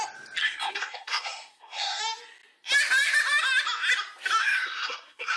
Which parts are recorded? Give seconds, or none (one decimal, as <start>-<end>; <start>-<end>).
0.0-0.4; 2.0-4.4

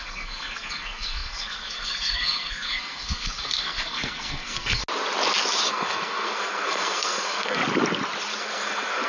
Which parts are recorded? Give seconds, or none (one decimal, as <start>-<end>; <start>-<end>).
4.8-5.7; 7.6-8.4